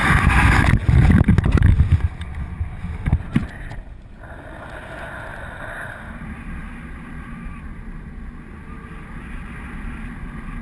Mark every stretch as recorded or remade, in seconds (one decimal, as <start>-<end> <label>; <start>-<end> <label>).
0.0-5.3 recorded; 5.3-6.2 remade; 6.2-10.6 recorded